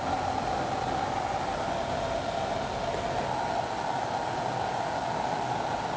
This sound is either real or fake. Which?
real